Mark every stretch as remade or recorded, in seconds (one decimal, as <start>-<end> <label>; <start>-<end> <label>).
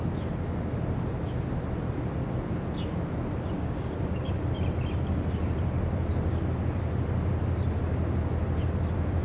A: 0.0-3.6 recorded; 3.6-4.3 remade; 4.3-9.2 recorded